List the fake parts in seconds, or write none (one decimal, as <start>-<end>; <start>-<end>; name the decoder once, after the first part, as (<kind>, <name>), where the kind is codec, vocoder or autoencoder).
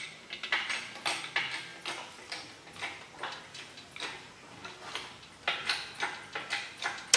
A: 1.7-3.4 (vocoder, BigVGAN v2)